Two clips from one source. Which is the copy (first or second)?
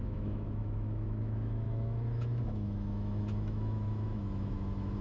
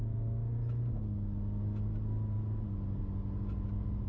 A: first